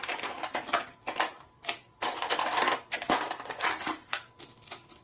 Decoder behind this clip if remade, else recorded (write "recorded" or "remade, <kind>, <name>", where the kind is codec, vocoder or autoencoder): recorded